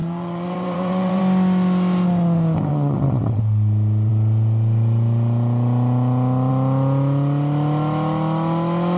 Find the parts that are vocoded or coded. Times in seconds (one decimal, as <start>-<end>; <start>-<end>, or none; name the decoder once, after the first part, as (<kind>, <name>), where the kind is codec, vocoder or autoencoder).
0.0-1.2 (vocoder, WaveNeXt); 2.7-3.4